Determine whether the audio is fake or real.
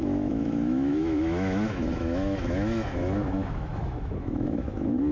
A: fake